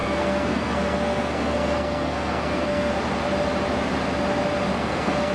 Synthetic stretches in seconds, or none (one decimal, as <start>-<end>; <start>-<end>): 0.0-2.9; 4.7-5.3